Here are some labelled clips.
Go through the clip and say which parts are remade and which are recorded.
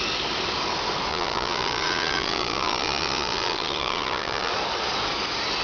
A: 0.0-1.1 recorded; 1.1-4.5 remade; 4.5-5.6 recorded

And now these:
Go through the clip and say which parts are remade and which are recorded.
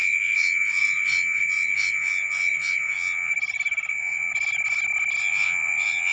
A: 0.0-3.3 remade; 3.3-3.9 recorded; 3.9-4.3 remade; 4.3-5.2 recorded; 5.2-6.1 remade